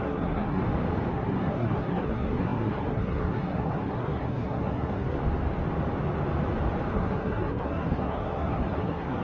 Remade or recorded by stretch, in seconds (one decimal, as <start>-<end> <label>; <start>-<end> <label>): 0.0-0.6 remade; 0.6-1.1 recorded; 1.1-5.2 remade; 5.2-6.9 recorded; 6.9-9.2 remade